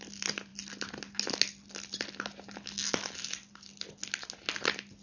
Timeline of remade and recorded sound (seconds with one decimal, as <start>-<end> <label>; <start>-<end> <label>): 0.0-5.0 recorded

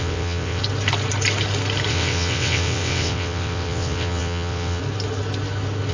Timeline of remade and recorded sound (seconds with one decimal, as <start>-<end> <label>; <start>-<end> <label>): 0.0-0.6 remade; 0.6-1.9 recorded; 1.9-4.8 remade; 4.8-5.9 recorded

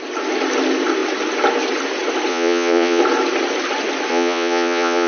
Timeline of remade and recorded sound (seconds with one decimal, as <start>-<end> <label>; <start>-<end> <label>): 0.0-2.3 recorded; 2.3-3.0 remade; 3.0-4.1 recorded; 4.1-5.1 remade

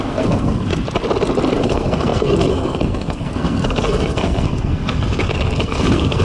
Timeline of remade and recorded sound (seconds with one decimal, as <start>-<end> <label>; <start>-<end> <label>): 0.0-0.7 remade; 0.7-1.6 recorded; 1.6-6.2 remade